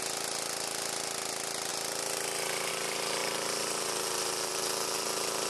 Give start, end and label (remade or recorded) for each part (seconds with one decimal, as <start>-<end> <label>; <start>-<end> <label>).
0.0-5.5 recorded